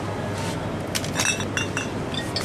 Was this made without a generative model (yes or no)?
yes